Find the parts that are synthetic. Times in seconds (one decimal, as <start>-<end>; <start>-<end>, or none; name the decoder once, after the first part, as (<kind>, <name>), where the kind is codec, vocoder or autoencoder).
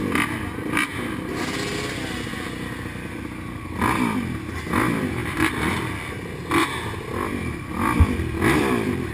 none